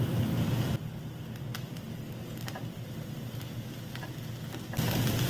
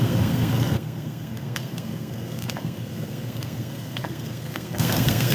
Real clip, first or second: first